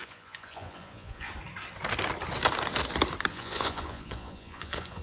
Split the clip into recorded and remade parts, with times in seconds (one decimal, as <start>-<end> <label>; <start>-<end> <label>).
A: 0.0-1.3 remade; 1.3-3.3 recorded; 3.3-5.0 remade